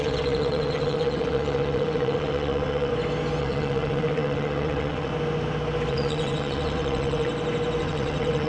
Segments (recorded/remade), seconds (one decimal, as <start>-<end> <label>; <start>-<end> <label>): 0.0-2.9 remade; 2.9-3.4 recorded; 3.4-5.1 remade; 5.1-5.9 recorded; 5.9-7.3 remade; 7.3-7.8 recorded; 7.8-8.5 remade